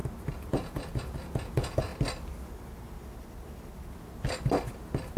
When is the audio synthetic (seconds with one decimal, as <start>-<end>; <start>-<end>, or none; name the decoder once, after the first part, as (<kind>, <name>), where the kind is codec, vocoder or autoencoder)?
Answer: 0.5-1.9 (vocoder, Vocos)